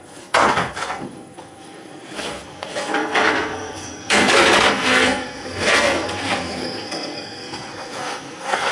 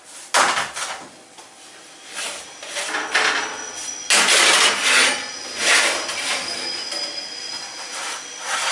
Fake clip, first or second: first